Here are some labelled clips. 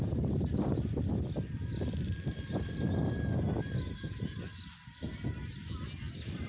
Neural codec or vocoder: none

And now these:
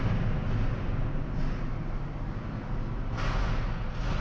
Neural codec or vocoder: none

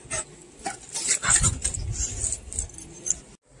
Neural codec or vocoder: none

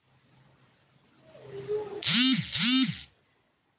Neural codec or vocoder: none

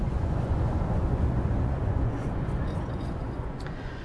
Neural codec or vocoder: vocoder, Vocos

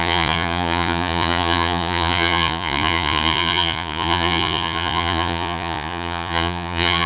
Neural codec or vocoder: vocoder, Vocos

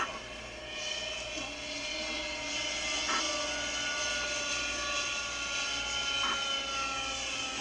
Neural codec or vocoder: none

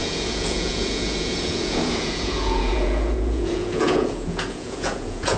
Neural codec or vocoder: vocoder, Vocos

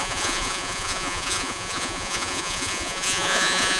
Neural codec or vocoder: vocoder, Vocos